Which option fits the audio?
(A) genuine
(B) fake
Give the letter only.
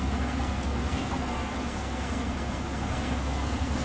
B